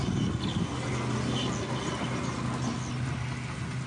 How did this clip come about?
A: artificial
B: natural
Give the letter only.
B